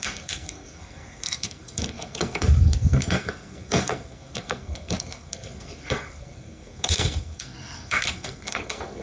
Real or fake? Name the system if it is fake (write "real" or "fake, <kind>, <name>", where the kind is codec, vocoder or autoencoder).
fake, codec, SNAC